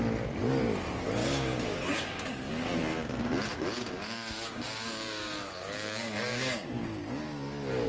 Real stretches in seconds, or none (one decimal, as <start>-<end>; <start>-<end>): 0.0-1.2; 2.5-3.5; 7.0-7.9